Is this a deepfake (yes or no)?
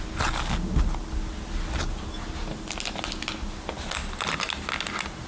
no